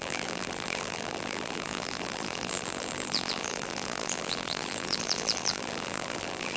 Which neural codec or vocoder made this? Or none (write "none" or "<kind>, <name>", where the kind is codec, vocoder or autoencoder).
vocoder, BigVGAN v2